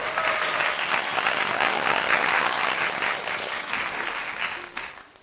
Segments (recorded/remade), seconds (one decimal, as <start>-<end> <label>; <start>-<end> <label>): 0.0-0.6 recorded; 0.6-3.7 remade; 3.7-5.2 recorded